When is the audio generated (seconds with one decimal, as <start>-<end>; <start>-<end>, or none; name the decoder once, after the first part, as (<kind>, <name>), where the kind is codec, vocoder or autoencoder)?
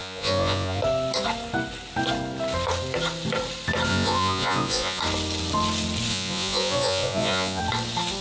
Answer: 0.0-0.8 (vocoder, Vocos); 3.9-5.0; 6.1-7.6